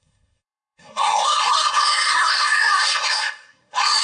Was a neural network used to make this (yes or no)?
yes